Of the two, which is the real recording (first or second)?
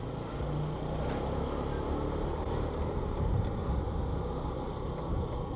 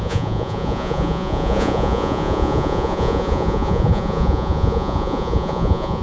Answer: first